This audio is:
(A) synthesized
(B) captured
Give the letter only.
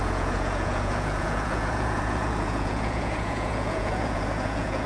A